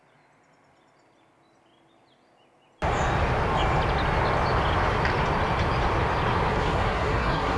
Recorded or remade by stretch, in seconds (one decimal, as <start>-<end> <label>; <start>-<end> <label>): 0.0-6.5 recorded; 6.5-7.6 remade

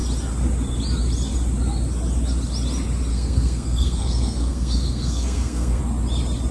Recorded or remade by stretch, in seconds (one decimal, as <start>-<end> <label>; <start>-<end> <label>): 0.0-3.1 recorded; 3.1-5.8 remade; 5.8-6.5 recorded

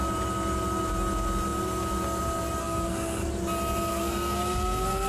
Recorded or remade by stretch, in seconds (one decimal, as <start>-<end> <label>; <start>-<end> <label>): 0.0-2.6 recorded; 2.6-3.3 remade; 3.3-3.9 recorded; 3.9-5.1 remade